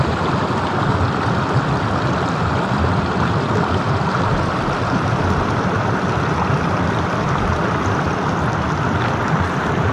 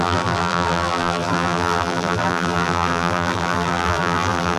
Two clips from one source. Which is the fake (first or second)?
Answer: second